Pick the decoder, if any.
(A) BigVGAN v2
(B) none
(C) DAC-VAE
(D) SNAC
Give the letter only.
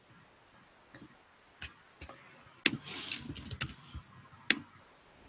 B